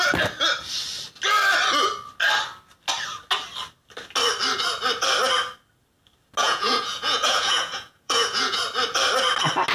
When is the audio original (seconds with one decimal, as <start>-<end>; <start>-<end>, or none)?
0.0-6.4; 8.6-9.7